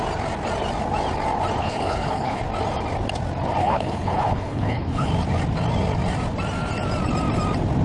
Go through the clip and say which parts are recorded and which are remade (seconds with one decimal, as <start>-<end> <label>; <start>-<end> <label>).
0.0-1.6 recorded; 1.6-2.4 remade; 2.4-3.6 recorded; 3.6-5.1 remade; 5.1-7.8 recorded